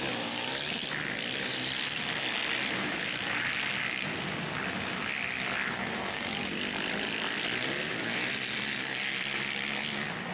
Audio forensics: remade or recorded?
recorded